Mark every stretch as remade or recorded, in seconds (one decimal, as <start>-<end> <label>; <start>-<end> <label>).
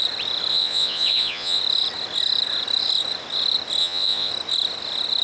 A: 0.0-0.5 recorded; 0.5-1.6 remade; 1.6-3.8 recorded; 3.8-4.3 remade; 4.3-5.2 recorded